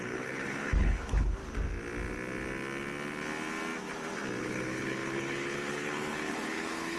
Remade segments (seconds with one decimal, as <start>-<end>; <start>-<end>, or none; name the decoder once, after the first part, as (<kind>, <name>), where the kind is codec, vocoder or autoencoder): 0.0-1.4 (codec, HILCodec); 4.4-7.0